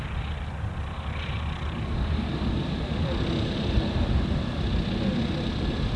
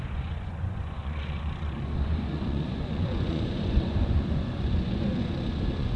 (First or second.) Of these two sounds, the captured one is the first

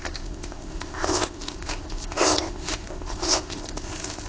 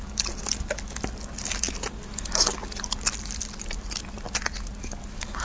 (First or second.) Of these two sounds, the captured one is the second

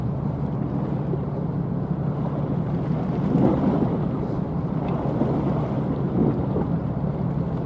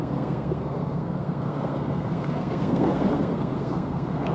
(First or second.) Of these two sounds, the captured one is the first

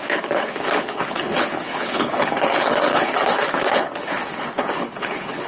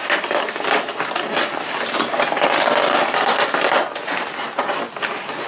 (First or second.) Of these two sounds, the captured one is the second